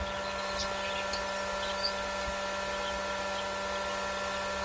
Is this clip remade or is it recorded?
recorded